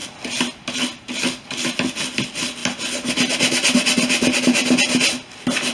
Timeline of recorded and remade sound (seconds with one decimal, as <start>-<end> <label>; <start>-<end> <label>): 0.0-5.7 recorded